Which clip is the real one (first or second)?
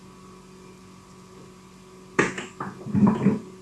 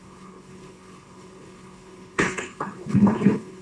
first